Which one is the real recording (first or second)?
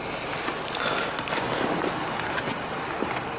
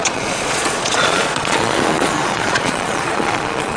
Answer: first